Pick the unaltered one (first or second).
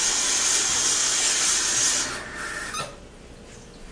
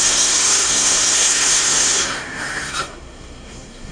first